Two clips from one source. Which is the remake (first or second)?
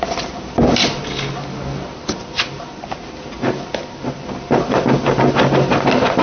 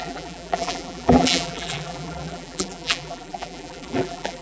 second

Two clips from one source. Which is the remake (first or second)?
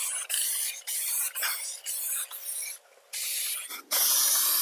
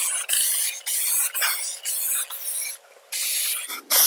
first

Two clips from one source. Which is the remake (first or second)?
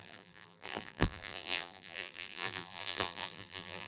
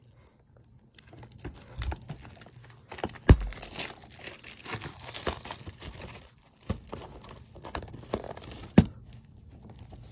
first